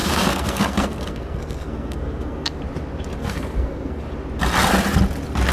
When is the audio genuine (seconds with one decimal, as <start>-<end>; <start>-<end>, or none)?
2.6-3.2; 4.0-5.5

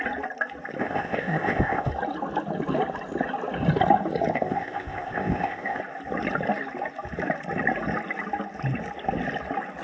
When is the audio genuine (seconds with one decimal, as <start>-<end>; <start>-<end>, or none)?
0.0-0.8; 1.9-4.3; 5.8-9.8